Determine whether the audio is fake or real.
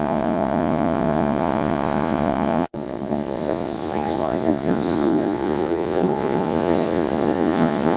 fake